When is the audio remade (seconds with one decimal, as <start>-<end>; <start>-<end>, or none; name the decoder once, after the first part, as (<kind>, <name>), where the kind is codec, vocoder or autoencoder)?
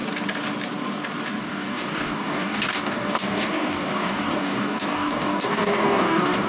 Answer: 1.4-6.5 (codec, DAC)